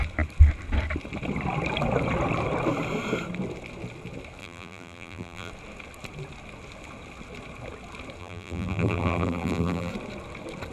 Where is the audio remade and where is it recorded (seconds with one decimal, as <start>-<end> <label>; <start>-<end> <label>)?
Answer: 0.0-4.4 recorded; 4.4-5.5 remade; 5.5-8.2 recorded; 8.2-9.9 remade; 9.9-10.7 recorded

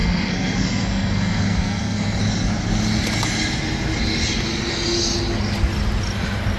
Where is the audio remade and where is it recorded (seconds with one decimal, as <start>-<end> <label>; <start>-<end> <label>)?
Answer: 0.0-2.2 remade; 2.2-6.6 recorded

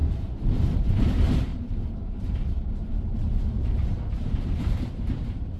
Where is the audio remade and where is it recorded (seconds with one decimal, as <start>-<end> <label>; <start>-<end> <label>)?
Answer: 0.0-0.8 recorded; 0.8-5.6 remade

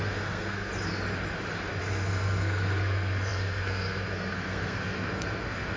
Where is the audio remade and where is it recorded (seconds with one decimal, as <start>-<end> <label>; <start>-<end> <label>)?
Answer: 0.0-0.7 remade; 0.7-1.8 recorded; 1.8-5.8 remade

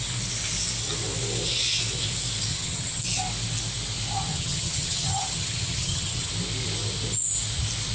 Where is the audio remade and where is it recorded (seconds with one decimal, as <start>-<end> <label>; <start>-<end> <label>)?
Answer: 0.0-2.5 recorded; 2.5-3.0 remade; 3.0-4.3 recorded; 4.3-6.3 remade; 6.3-7.9 recorded

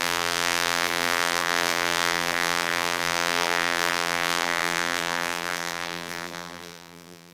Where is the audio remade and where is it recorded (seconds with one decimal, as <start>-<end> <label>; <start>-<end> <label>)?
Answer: 0.0-7.3 remade